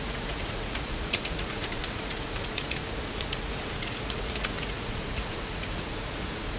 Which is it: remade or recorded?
remade